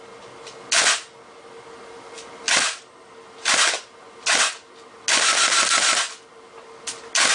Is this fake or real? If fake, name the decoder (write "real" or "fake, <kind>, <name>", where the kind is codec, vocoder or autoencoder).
real